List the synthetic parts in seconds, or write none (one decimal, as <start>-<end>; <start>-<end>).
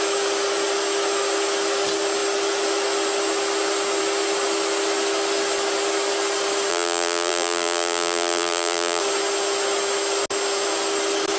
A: 6.7-9.0